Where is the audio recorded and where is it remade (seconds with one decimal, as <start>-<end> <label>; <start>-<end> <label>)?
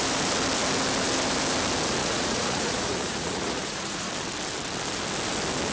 0.0-2.0 recorded; 2.0-4.1 remade; 4.1-5.7 recorded